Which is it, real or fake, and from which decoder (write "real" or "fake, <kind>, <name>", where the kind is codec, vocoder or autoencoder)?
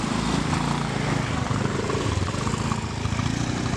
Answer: real